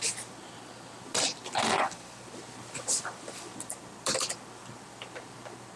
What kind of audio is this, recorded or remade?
recorded